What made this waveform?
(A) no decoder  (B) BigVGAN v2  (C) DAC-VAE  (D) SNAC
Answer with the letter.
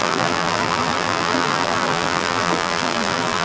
B